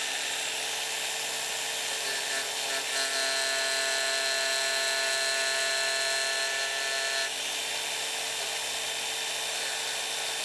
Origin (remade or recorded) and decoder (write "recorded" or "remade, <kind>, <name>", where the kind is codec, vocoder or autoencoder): recorded